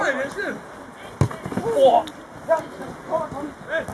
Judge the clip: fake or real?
real